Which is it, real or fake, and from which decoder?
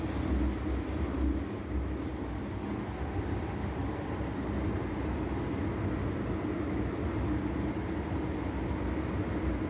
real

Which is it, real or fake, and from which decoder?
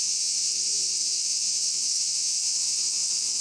fake, vocoder, WaveNeXt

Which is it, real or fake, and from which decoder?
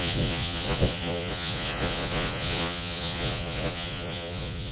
fake, vocoder, Vocos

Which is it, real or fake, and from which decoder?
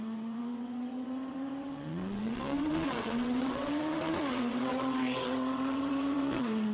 fake, vocoder, WaveNeXt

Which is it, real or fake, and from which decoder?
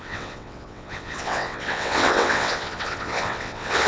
fake, vocoder, WaveNeXt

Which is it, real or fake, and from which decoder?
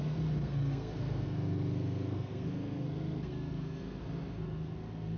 fake, codec, SNAC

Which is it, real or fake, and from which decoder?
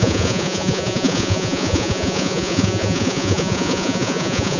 fake, vocoder, Vocos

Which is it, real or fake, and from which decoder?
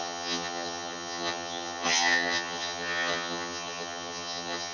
fake, vocoder, HiFi-GAN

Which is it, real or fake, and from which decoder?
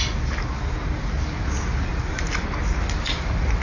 real